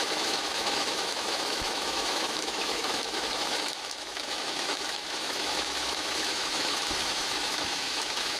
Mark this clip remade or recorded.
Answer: remade